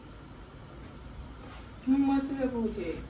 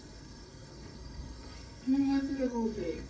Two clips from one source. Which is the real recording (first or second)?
first